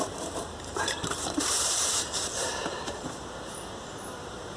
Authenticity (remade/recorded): remade